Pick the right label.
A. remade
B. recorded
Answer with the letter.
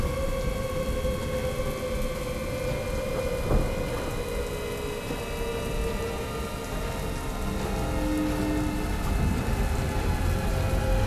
B